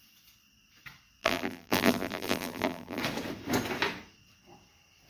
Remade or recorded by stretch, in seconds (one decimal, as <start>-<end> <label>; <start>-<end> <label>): 0.0-1.2 recorded; 1.2-3.0 remade; 3.0-5.1 recorded